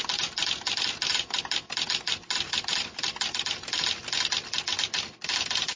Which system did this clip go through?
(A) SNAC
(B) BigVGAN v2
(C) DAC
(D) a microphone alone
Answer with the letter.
D